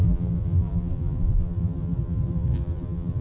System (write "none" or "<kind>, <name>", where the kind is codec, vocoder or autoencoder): vocoder, BigVGAN v2